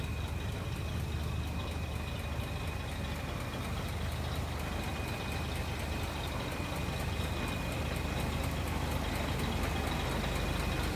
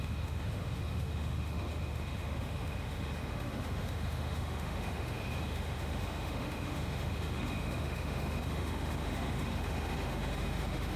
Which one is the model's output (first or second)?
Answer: second